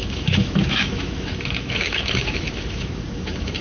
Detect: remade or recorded remade